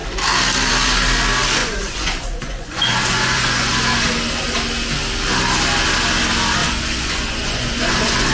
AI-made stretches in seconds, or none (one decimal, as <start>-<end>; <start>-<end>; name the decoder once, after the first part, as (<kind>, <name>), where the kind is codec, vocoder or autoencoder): 1.6-3.7 (vocoder, Vocos); 6.6-8.3